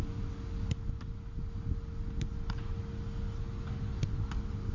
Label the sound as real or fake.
real